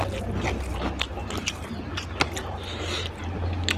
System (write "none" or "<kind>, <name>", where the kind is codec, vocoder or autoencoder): none